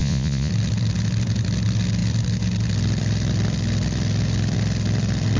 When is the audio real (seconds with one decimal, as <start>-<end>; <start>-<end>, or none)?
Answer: 0.5-5.4